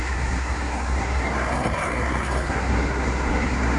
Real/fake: fake